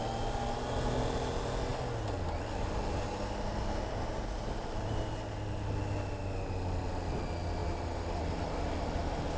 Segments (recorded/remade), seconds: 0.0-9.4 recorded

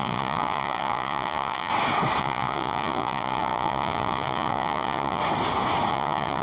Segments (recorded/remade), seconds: 0.0-1.7 remade; 1.7-2.2 recorded; 2.2-5.2 remade; 5.2-5.9 recorded; 5.9-6.4 remade